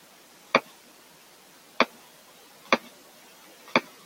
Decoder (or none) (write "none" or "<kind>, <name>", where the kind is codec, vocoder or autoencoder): none